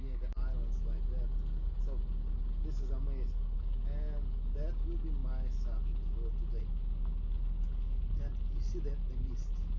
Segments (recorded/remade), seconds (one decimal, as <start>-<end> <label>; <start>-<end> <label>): 0.0-9.8 recorded